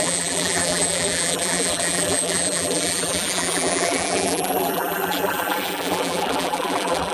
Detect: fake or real fake